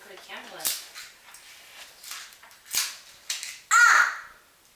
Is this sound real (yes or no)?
yes